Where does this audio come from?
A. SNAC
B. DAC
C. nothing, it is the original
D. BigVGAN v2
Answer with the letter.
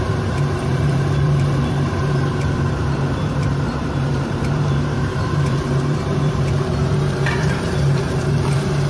D